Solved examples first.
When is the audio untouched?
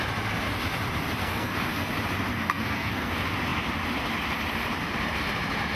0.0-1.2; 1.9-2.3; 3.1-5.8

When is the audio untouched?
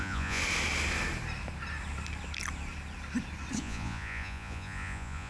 0.4-3.6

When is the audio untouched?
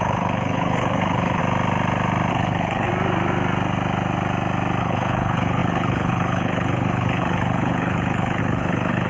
1.4-2.3; 2.9-4.8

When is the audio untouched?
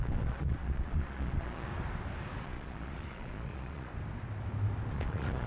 1.7-2.4; 3.9-4.9